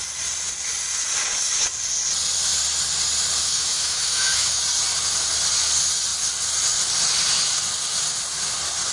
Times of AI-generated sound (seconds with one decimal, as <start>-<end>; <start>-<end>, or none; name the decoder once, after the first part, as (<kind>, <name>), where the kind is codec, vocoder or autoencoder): 3.4-4.6 (autoencoder, DAC-VAE)